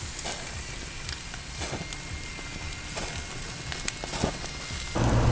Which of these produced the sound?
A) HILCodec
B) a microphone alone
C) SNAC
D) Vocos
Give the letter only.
B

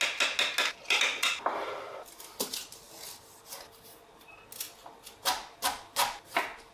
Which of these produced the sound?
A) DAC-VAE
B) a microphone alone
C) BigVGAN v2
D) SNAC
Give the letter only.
B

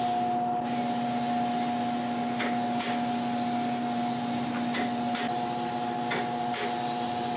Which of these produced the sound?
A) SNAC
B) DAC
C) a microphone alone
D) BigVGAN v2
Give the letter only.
C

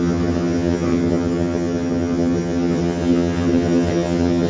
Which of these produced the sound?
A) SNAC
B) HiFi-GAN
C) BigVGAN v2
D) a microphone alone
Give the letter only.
B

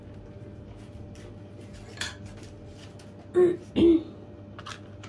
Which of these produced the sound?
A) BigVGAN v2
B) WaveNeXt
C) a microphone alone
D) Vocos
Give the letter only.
C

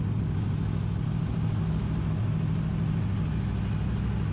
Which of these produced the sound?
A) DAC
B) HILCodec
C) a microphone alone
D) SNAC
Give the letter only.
C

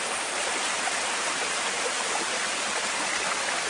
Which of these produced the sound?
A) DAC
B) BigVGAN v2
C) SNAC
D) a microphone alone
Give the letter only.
D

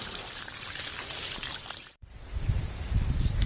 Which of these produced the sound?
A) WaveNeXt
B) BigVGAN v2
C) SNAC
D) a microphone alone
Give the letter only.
B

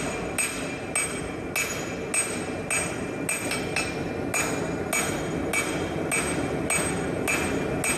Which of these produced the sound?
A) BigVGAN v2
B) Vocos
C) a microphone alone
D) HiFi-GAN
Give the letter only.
C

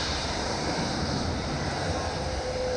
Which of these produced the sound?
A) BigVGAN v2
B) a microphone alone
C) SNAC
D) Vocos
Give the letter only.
A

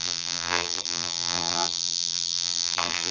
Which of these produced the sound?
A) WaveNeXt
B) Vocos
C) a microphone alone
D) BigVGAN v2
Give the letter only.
D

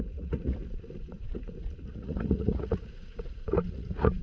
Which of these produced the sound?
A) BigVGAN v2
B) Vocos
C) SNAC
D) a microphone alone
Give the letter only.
B